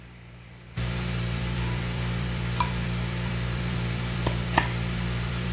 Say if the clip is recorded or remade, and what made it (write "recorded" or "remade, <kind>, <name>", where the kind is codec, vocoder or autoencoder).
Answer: remade, vocoder, BigVGAN v2